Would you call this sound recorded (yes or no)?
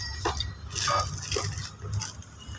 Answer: yes